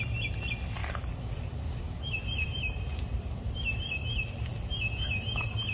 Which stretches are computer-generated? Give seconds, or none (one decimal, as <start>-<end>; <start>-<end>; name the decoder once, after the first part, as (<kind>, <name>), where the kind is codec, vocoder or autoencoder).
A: 2.9-3.8 (vocoder, BigVGAN v2)